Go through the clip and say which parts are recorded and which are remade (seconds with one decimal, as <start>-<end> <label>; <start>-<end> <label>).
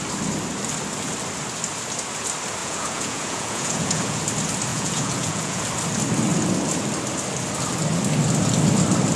0.0-2.6 recorded; 2.6-4.2 remade; 4.2-4.7 recorded; 4.7-5.6 remade; 5.6-9.2 recorded